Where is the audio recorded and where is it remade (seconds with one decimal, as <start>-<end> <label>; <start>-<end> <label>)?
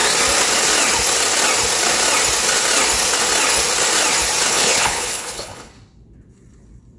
0.0-4.5 recorded; 4.5-5.7 remade; 5.7-7.0 recorded